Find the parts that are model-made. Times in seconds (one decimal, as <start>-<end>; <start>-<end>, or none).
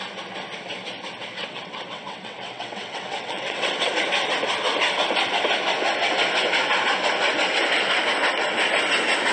1.4-3.9